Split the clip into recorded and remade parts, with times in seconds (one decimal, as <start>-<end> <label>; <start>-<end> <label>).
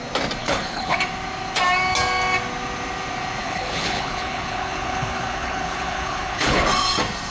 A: 0.0-0.4 recorded; 0.4-1.0 remade; 1.0-3.4 recorded; 3.4-6.6 remade; 6.6-7.3 recorded